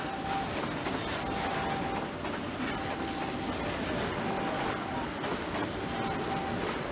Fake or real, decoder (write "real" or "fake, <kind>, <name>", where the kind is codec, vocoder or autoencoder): real